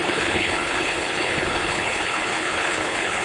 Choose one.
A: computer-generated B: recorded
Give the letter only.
A